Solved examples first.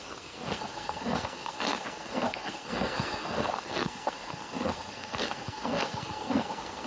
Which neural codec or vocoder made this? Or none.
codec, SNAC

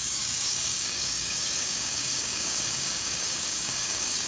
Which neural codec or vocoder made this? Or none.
codec, DAC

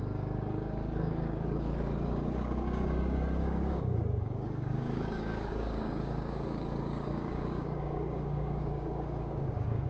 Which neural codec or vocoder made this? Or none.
codec, DAC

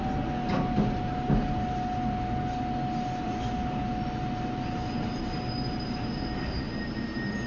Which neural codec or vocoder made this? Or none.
none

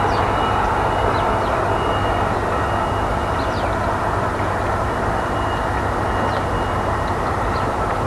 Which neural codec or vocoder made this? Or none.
none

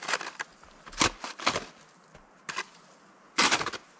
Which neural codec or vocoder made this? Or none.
none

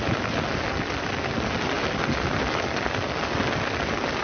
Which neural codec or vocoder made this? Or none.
none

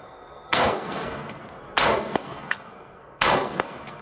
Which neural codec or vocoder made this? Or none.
codec, SNAC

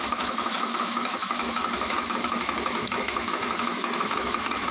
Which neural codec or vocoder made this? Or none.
autoencoder, DAC-VAE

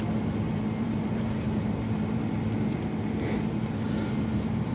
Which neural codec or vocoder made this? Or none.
none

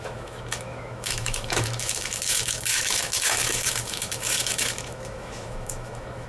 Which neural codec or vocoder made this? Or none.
autoencoder, DAC-VAE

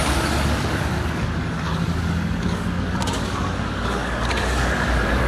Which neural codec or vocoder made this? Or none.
codec, DAC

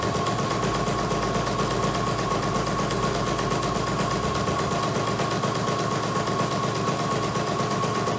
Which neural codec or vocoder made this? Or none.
none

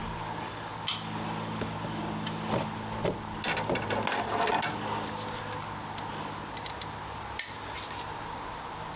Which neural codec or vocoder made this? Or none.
none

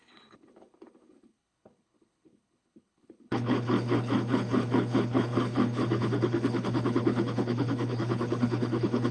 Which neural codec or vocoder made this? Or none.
codec, HILCodec